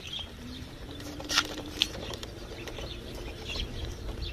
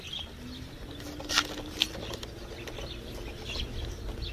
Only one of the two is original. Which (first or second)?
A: second